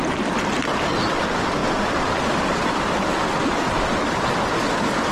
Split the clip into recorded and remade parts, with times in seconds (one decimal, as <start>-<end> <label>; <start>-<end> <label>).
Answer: 0.0-5.1 recorded